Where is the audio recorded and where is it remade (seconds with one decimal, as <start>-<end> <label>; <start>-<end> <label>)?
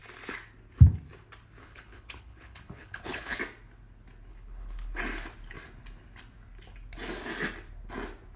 0.0-1.6 recorded; 1.6-3.4 remade; 3.4-4.3 recorded; 4.3-5.0 remade; 5.0-8.4 recorded